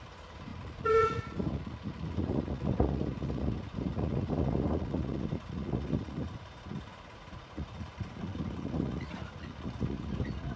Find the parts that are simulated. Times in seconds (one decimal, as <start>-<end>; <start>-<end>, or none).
0.0-10.6